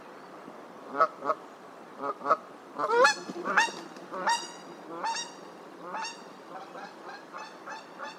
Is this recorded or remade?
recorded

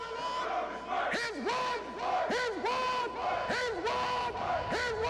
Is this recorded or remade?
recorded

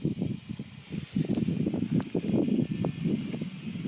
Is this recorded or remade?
recorded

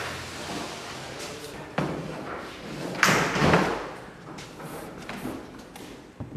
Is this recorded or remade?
recorded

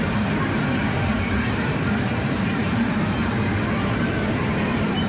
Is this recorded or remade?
remade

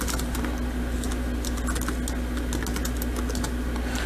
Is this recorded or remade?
recorded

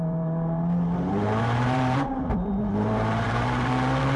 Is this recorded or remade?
remade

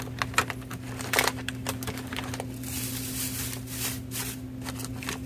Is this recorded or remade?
remade